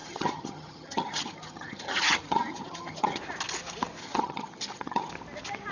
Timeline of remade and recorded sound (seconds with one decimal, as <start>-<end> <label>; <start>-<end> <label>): 0.0-3.2 remade; 3.2-4.0 recorded; 4.0-5.1 remade; 5.1-5.7 recorded